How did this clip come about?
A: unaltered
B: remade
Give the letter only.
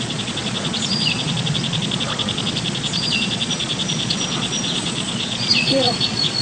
B